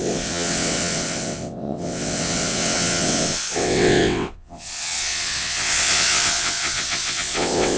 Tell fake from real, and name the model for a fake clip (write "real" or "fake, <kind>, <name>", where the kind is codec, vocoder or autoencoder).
fake, vocoder, WaveNeXt